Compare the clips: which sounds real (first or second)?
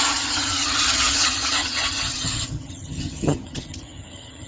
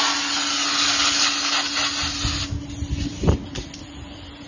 second